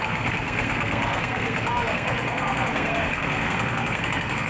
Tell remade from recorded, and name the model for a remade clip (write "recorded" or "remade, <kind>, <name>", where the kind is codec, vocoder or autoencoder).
remade, codec, SNAC